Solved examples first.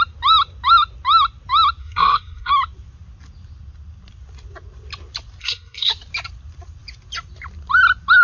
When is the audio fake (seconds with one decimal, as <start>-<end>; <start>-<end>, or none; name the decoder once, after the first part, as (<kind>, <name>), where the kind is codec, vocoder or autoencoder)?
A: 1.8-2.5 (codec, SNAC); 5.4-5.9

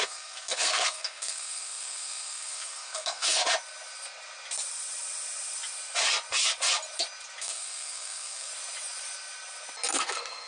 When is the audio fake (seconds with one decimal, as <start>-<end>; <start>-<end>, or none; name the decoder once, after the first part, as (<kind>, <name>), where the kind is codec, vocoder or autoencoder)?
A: 0.0-3.4 (codec, SNAC); 7.4-8.5; 9.9-10.5

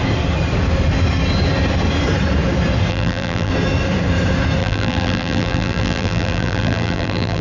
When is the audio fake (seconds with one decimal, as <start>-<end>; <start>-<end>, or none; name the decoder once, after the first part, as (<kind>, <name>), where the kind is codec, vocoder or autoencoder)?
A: 2.9-3.5 (vocoder, BigVGAN v2); 4.6-7.4